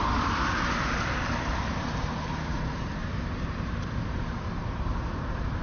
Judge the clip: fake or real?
fake